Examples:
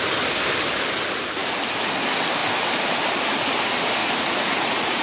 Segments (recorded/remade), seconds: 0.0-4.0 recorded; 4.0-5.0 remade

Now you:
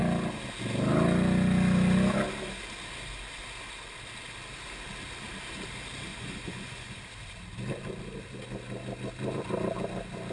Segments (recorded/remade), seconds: 0.0-6.1 recorded; 6.1-7.0 remade; 7.0-10.3 recorded

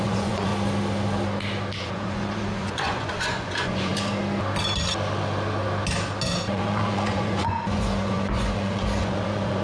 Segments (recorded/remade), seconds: 0.0-0.5 remade; 0.5-1.8 recorded; 1.8-3.9 remade; 3.9-6.5 recorded; 6.5-9.6 remade

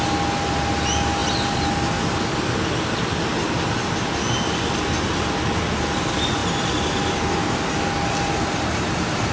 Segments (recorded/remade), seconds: 0.0-9.3 recorded

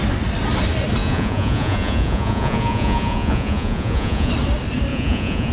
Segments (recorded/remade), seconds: 0.0-1.0 recorded; 1.0-4.3 remade; 4.3-4.9 recorded; 4.9-5.5 remade

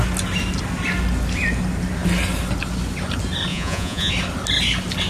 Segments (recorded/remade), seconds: 0.0-3.5 recorded; 3.5-4.1 remade; 4.1-5.1 recorded